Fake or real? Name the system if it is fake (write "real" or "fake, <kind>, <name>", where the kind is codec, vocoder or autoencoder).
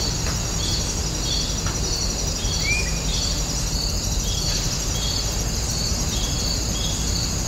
real